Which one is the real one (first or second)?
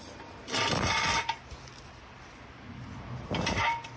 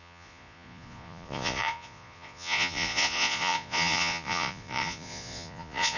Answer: first